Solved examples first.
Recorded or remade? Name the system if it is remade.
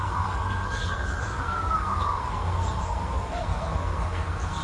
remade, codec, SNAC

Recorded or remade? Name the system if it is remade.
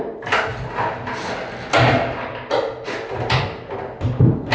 recorded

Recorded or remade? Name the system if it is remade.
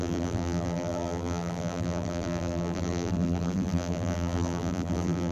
remade, vocoder, BigVGAN v2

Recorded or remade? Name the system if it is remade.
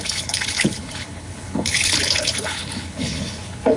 remade, codec, HILCodec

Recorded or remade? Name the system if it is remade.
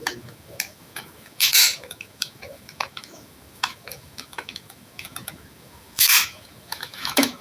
remade, autoencoder, DAC-VAE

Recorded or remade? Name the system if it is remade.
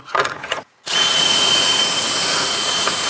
remade, vocoder, Vocos